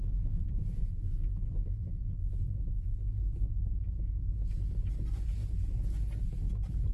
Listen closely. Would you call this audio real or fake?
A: real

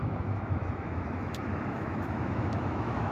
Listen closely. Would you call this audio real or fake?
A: fake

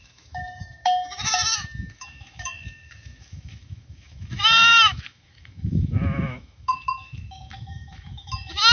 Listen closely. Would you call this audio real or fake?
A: fake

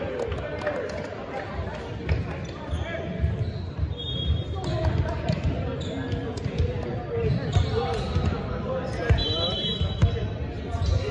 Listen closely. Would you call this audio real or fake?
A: real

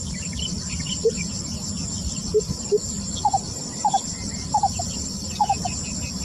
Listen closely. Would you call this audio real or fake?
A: real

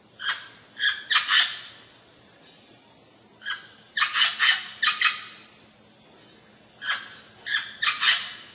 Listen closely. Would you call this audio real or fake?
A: real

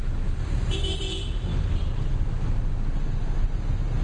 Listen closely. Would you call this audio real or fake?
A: real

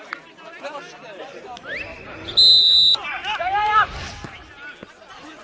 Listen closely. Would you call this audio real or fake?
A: real